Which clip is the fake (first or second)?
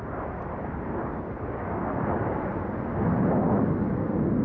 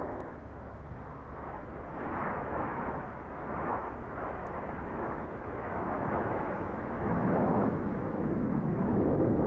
second